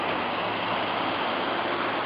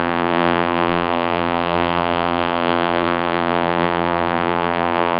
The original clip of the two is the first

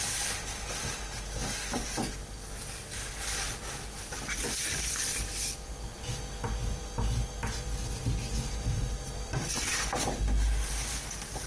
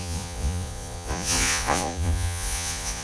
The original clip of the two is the first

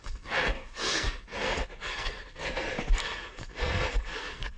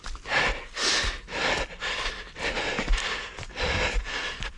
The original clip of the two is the second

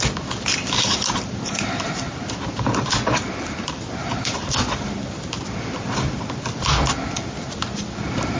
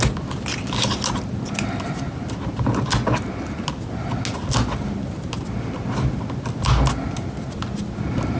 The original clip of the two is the second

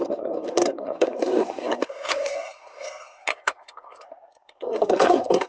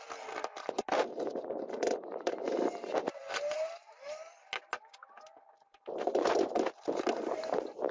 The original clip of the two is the second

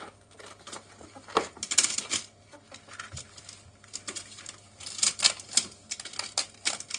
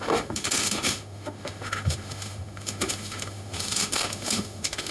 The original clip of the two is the first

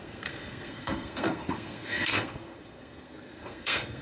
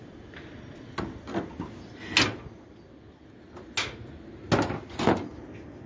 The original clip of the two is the second